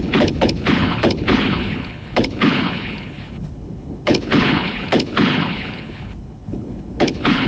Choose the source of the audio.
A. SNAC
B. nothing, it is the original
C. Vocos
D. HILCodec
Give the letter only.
D